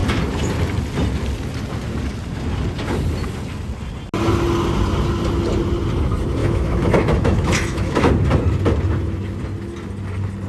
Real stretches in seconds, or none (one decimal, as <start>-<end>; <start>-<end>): 0.0-6.4; 8.1-10.5